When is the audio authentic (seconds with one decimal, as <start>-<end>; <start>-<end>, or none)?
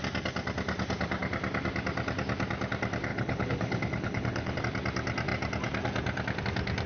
0.0-3.1; 4.6-6.9